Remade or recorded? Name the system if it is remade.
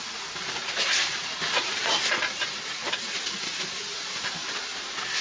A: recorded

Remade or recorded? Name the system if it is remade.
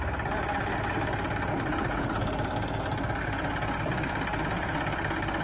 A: recorded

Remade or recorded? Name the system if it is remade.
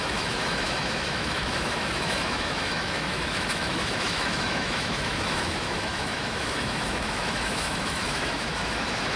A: remade, autoencoder, DAC-VAE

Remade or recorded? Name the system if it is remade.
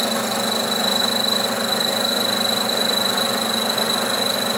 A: recorded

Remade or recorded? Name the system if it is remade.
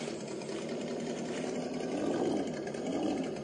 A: recorded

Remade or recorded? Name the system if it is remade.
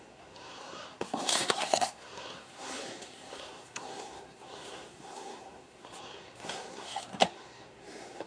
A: remade, codec, SNAC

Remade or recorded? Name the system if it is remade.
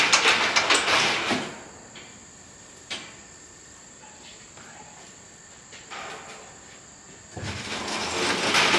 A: recorded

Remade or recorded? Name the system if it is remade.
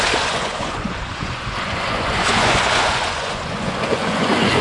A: remade, vocoder, Vocos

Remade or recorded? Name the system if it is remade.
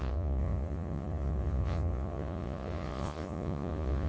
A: remade, vocoder, Vocos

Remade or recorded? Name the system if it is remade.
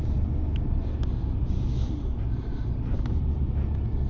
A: recorded